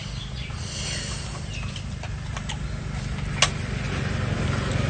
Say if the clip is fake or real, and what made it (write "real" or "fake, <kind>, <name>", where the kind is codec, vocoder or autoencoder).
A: real